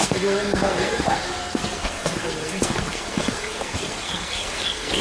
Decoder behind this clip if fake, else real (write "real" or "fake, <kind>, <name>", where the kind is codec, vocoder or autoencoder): fake, codec, SNAC